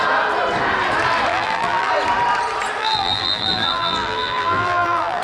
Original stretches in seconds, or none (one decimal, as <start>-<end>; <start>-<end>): 0.0-1.3; 1.9-2.8